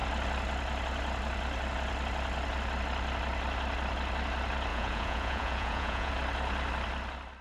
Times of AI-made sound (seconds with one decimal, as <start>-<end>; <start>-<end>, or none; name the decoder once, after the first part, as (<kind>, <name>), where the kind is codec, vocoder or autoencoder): 4.7-6.1 (vocoder, Vocos)